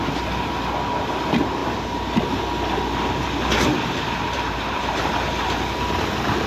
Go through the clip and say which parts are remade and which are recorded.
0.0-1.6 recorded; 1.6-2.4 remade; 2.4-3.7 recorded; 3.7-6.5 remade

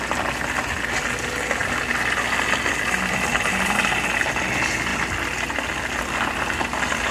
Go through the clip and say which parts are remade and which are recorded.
0.0-1.6 recorded; 1.6-3.9 remade; 3.9-7.1 recorded

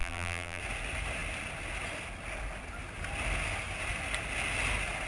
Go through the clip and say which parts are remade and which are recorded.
0.0-0.6 remade; 0.6-5.1 recorded

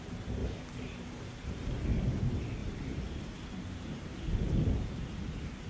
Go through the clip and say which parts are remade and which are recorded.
0.0-0.4 recorded; 0.4-1.9 remade; 1.9-2.6 recorded; 2.6-4.5 remade; 4.5-5.7 recorded

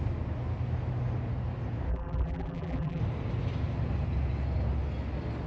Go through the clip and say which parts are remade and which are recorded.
0.0-1.9 recorded; 1.9-3.0 remade; 3.0-5.5 recorded

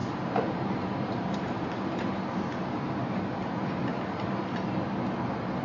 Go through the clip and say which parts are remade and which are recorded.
0.0-2.9 remade; 2.9-3.9 recorded; 3.9-4.8 remade; 4.8-5.6 recorded

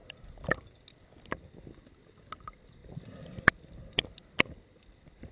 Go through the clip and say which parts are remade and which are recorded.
0.0-5.3 recorded